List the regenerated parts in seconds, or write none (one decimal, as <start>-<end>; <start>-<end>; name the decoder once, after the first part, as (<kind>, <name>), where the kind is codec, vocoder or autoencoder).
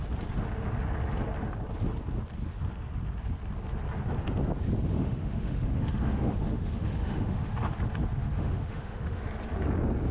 4.9-7.5 (autoencoder, DAC-VAE); 8.2-9.2